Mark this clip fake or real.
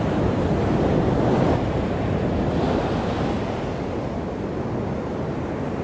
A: real